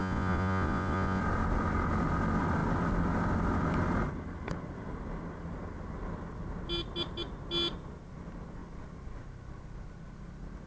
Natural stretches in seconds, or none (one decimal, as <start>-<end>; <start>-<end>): 1.2-10.7